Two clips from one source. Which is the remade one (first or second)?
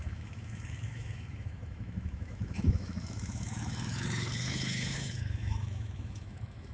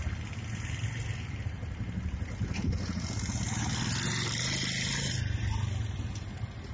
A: first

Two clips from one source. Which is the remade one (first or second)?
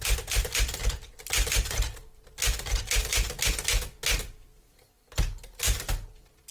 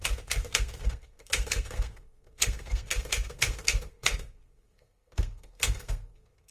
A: second